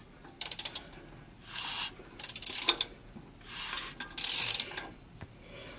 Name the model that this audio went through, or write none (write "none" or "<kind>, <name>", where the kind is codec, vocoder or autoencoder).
none